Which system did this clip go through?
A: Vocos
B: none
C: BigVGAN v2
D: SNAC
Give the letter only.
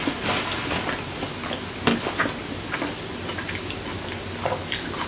B